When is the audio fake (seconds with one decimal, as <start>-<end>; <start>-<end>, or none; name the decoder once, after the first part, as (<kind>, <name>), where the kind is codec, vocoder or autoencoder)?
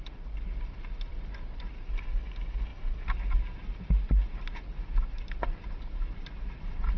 none